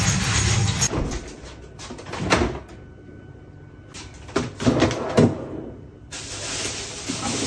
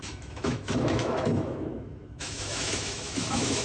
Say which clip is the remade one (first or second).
second